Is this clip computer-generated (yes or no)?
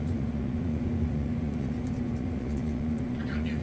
yes